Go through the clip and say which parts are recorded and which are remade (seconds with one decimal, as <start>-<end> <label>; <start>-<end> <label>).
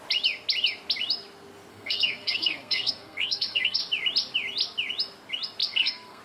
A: 0.0-1.7 recorded; 1.7-3.8 remade; 3.8-5.6 recorded; 5.6-6.2 remade